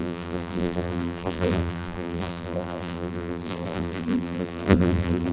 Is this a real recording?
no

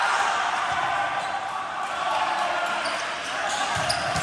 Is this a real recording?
yes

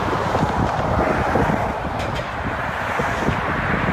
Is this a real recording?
yes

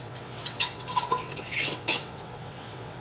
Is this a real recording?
no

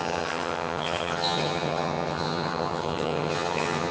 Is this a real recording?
no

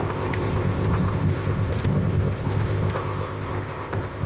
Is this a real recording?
no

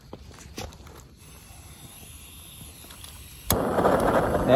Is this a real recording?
yes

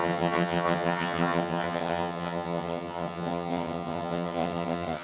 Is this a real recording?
no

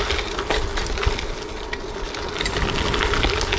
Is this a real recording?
yes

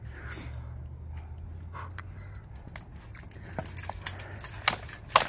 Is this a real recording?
yes